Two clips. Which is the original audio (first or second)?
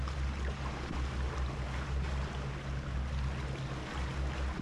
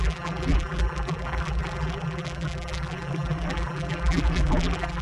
first